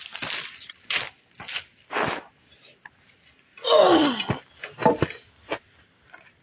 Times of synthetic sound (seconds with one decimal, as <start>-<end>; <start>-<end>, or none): none